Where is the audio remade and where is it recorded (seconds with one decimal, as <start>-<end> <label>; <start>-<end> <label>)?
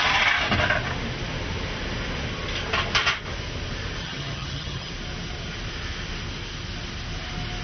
0.0-4.0 recorded; 4.0-4.9 remade; 4.9-7.6 recorded